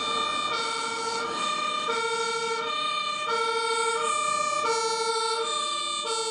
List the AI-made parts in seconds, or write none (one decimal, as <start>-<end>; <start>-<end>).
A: 0.6-4.1; 5.1-5.8

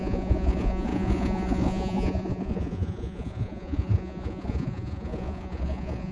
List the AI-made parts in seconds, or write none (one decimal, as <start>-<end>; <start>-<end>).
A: 0.0-6.1

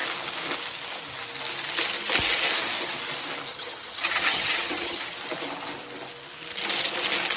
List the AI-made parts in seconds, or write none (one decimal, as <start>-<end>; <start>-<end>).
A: 3.5-5.0

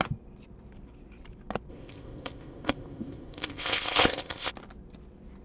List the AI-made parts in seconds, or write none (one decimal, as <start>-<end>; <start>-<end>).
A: 1.7-4.5

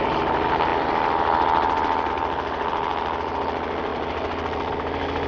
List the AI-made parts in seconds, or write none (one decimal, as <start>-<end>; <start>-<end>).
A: none

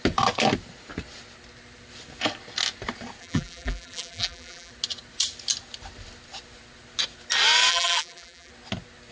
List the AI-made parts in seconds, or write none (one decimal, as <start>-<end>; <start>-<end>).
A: 3.2-4.7; 7.7-8.5

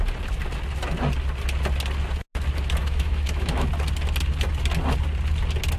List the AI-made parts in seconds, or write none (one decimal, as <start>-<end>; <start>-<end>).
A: 2.8-3.7